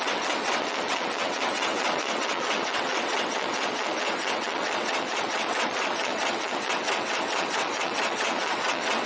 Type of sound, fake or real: fake